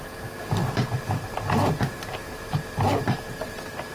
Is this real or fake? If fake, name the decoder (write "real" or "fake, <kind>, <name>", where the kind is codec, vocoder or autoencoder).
fake, vocoder, BigVGAN v2